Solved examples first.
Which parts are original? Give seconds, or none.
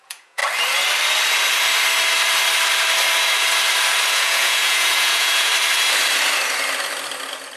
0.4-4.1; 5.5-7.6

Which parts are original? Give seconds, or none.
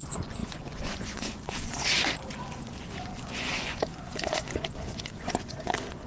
none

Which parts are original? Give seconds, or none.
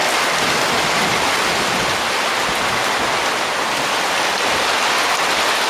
0.0-5.7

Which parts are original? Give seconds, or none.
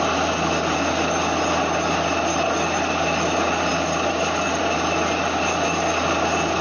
0.0-6.6